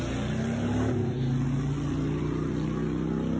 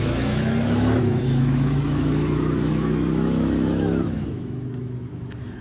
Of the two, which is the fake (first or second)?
second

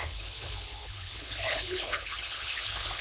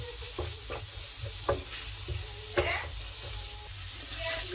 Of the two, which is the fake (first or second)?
first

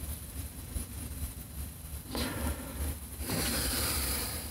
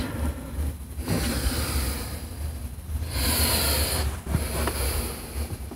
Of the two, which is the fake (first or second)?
first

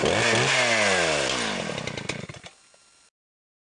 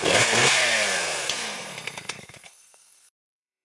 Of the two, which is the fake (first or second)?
second